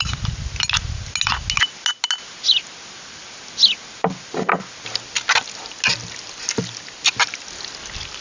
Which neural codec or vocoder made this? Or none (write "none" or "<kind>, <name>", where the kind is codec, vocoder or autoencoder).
none